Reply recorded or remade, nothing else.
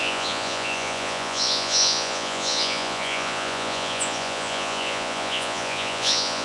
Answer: remade